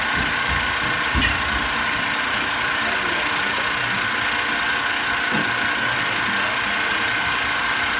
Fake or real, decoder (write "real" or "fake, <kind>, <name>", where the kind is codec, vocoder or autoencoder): real